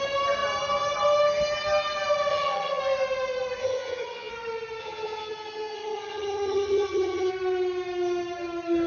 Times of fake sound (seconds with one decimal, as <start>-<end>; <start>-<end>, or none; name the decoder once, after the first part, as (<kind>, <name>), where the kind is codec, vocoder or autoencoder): 2.3-2.8 (vocoder, HiFi-GAN); 3.6-4.3; 4.8-7.3

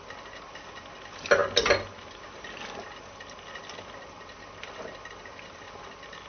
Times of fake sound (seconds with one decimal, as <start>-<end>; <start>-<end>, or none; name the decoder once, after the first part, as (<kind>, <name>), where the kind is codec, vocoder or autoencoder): none

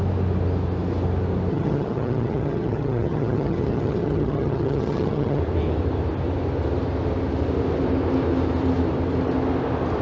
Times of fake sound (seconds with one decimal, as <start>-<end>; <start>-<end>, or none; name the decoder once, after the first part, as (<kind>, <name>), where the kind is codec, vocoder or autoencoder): 1.5-5.4 (vocoder, HiFi-GAN)

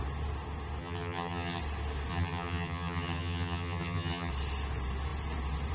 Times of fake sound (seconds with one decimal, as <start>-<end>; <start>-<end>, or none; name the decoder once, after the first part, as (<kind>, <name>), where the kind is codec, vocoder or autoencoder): 0.8-1.6 (vocoder, HiFi-GAN); 2.1-4.3